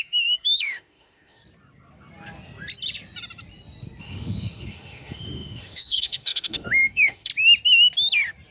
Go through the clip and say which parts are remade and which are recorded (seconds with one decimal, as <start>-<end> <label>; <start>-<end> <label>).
0.0-1.4 remade; 1.4-4.0 recorded; 4.0-7.3 remade; 7.3-8.5 recorded

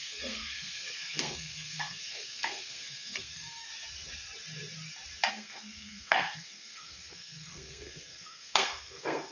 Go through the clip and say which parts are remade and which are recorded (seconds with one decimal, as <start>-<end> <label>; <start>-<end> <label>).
0.0-3.7 remade; 3.7-5.3 recorded; 5.3-9.3 remade

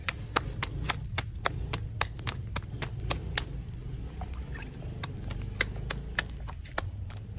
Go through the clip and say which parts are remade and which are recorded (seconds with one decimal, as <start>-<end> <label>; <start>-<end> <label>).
0.0-7.4 recorded

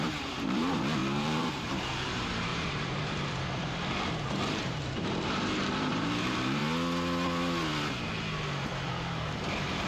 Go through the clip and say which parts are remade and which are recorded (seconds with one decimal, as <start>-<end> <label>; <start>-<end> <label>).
0.0-6.6 remade; 6.6-8.9 recorded; 8.9-9.9 remade

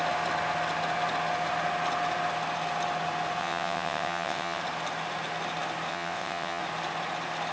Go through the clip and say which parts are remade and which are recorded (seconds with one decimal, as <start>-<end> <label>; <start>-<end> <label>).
0.0-3.4 recorded; 3.4-4.6 remade; 4.6-5.9 recorded; 5.9-6.6 remade; 6.6-7.5 recorded

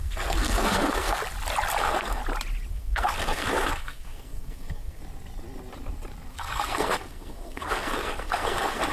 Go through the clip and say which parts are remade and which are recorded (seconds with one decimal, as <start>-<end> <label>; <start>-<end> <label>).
0.0-1.2 remade; 1.2-1.8 recorded; 1.8-2.2 remade; 2.2-2.7 recorded; 2.7-5.0 remade; 5.0-6.3 recorded; 6.3-8.9 remade

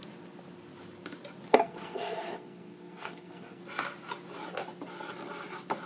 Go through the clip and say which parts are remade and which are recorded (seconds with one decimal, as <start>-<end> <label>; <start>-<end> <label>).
0.0-1.5 recorded; 1.5-3.6 remade; 3.6-5.8 recorded

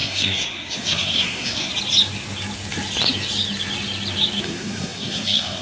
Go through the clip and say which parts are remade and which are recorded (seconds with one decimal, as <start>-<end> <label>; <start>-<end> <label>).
0.0-1.7 remade; 1.7-4.4 recorded; 4.4-5.6 remade